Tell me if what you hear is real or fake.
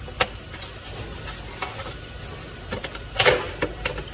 real